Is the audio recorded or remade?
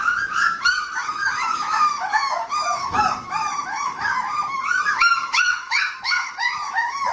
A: remade